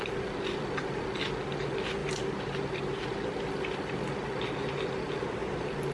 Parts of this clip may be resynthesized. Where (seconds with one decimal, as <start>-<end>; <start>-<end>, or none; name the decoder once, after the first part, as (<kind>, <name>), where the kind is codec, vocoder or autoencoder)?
none

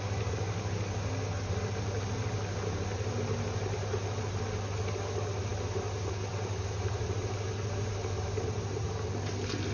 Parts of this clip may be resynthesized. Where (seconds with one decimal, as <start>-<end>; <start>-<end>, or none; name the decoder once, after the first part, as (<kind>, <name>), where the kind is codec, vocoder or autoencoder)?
none

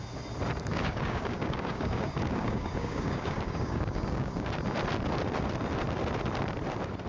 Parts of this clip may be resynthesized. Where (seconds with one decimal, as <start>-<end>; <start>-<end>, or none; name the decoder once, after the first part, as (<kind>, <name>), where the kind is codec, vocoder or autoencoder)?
0.7-4.5 (codec, DAC)

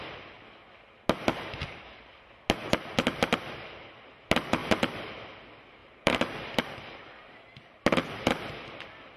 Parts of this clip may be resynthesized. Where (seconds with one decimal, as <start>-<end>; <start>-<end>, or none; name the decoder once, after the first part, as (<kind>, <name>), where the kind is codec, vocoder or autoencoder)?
1.6-2.2 (vocoder, BigVGAN v2); 4.6-5.1; 5.8-6.6

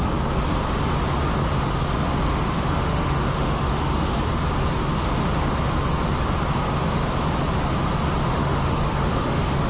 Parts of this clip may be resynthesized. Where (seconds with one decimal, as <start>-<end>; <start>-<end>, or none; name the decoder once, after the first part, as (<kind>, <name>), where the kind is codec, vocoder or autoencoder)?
2.3-4.2 (autoencoder, DAC-VAE); 8.3-9.7

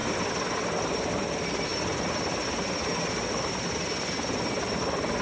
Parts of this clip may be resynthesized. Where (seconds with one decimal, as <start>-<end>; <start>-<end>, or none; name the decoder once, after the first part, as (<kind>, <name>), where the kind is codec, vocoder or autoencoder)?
none

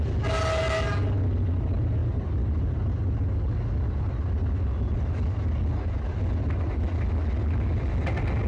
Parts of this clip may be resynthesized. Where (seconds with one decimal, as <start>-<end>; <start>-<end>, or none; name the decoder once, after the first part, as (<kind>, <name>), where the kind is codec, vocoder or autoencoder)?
none

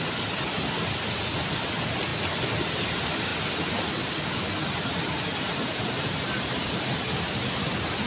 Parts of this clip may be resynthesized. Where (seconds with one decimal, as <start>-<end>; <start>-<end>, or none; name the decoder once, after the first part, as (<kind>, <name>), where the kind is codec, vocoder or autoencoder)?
none